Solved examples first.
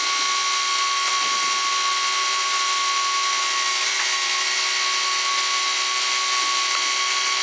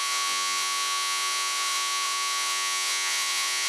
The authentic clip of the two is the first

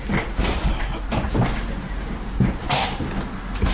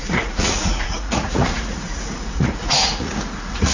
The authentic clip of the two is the first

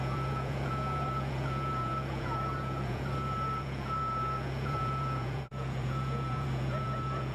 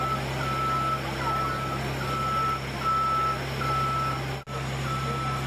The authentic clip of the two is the second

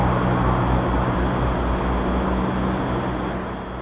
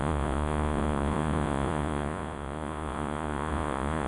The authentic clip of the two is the first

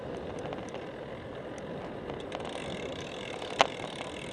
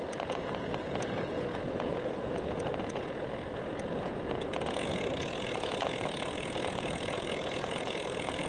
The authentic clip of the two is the first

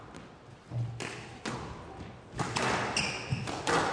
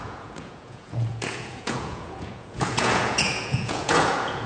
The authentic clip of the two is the first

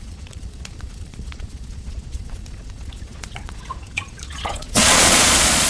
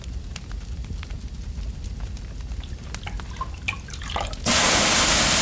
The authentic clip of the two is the second